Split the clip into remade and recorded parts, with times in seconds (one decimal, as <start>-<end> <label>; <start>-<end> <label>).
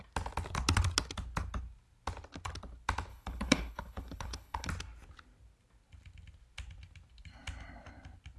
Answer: 0.0-3.1 recorded; 3.1-4.7 remade; 4.7-8.4 recorded